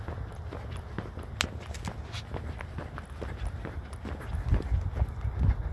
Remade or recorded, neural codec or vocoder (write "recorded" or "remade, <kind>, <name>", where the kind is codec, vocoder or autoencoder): recorded